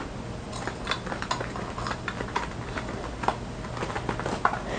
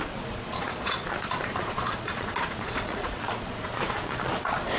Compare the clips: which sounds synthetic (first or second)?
second